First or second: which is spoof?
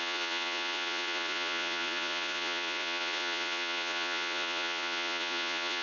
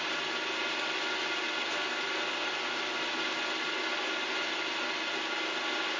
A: first